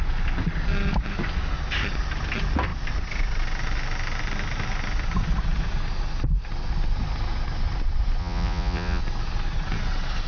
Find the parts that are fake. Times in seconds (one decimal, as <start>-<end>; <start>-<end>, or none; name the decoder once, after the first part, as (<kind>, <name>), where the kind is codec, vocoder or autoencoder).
8.2-9.0 (vocoder, Vocos)